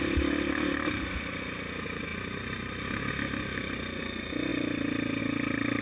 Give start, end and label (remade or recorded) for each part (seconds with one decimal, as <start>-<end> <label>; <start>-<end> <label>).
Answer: 0.0-5.8 recorded